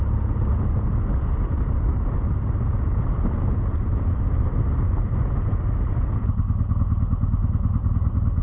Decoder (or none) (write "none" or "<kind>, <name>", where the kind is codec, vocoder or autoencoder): none